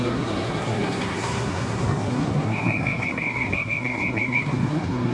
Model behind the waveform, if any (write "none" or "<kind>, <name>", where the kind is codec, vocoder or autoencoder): codec, SNAC